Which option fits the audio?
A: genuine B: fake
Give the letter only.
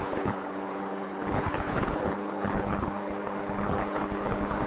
B